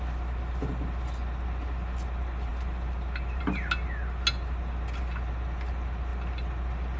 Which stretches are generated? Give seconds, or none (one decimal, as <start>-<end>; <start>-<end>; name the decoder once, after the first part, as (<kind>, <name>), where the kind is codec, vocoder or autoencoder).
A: none